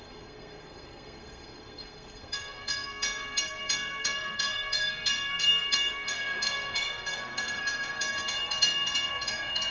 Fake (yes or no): yes